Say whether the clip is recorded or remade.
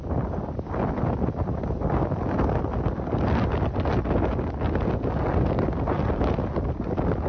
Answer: recorded